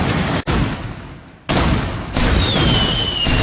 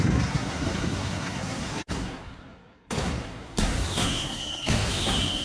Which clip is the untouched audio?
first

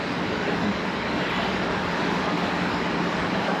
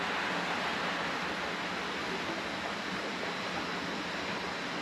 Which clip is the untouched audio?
second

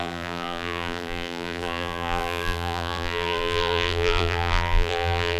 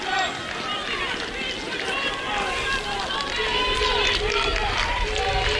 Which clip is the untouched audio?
second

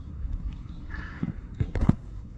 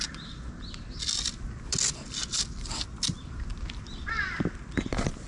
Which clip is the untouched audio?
second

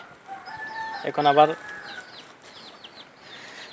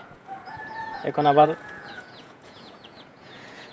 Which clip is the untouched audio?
first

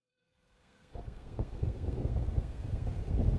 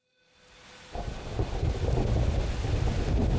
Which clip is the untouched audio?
second